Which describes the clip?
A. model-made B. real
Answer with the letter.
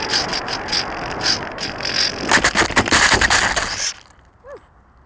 B